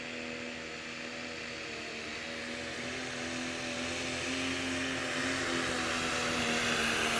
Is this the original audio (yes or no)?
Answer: yes